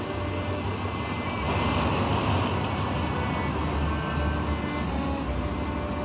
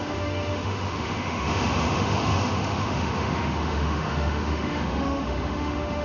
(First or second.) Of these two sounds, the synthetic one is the second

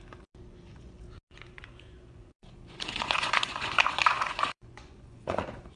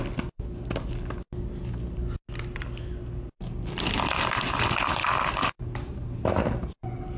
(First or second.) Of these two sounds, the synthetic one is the first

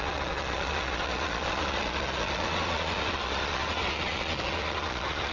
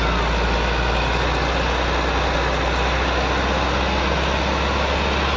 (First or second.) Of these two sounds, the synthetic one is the first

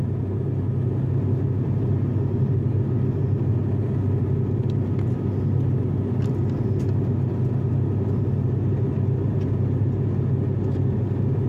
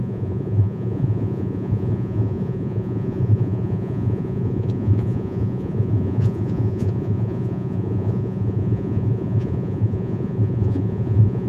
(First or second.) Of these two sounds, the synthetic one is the second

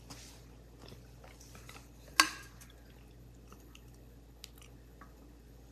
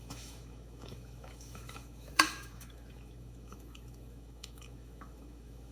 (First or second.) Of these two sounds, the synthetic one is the second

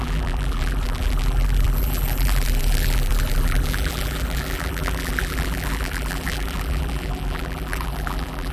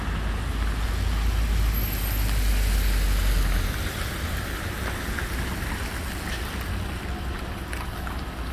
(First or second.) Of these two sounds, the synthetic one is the first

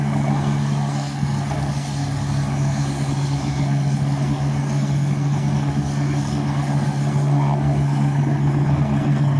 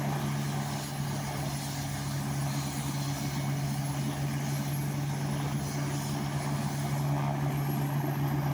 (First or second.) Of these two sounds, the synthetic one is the first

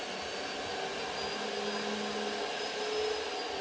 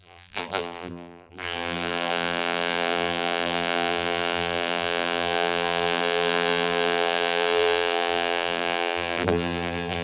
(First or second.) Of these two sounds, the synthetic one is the second